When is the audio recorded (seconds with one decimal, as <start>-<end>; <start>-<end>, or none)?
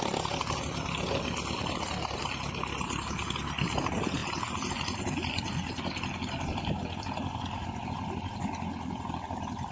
0.0-9.7